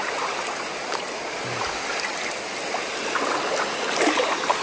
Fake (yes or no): no